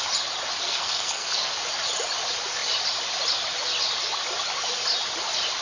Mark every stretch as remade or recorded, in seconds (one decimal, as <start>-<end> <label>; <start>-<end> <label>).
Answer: 0.0-0.6 recorded; 0.6-1.5 remade; 1.5-5.6 recorded